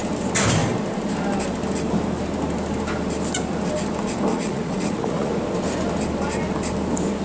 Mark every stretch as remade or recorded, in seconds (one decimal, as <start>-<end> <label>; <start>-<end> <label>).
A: 0.0-4.3 recorded; 4.3-5.3 remade; 5.3-7.2 recorded